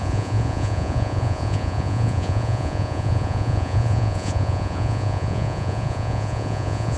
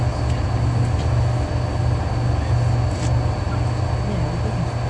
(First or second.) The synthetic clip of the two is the first